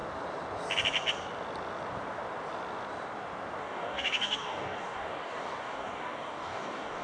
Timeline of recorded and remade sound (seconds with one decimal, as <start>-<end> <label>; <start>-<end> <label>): 0.0-3.6 recorded; 3.6-7.0 remade